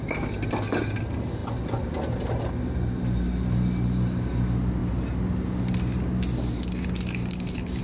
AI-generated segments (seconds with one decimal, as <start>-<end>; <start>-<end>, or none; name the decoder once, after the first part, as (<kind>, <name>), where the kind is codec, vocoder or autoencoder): none